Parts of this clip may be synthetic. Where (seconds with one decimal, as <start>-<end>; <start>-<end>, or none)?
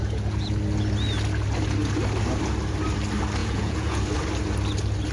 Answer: 3.4-4.0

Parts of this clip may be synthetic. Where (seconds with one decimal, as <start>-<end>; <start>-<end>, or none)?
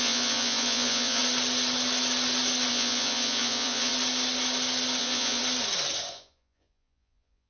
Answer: 0.0-1.2; 2.7-3.9; 5.0-5.4; 6.1-7.5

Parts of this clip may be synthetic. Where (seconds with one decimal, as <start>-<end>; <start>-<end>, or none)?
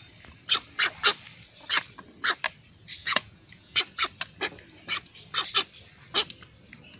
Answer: 3.0-3.8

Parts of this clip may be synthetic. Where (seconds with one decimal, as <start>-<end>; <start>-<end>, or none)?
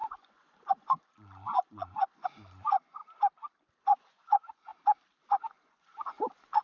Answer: 0.0-3.0; 3.8-4.7; 5.4-6.6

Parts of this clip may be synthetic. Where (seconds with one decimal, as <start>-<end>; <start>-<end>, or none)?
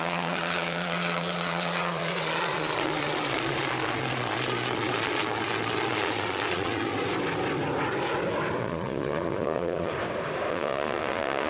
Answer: 0.0-6.9; 8.6-9.9; 10.5-11.5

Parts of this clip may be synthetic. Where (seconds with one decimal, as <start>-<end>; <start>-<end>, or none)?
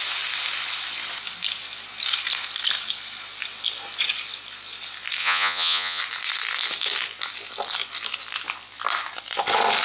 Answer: 5.2-6.0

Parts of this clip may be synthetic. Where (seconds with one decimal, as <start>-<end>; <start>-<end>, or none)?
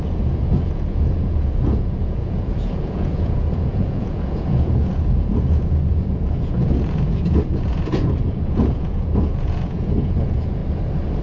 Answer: 0.0-10.6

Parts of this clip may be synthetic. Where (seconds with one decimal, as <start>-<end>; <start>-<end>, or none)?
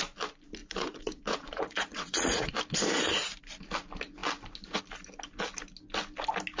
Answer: 0.6-2.5